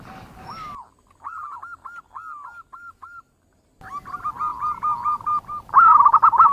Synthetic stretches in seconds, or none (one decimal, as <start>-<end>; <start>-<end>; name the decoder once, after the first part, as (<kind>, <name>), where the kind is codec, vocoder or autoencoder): none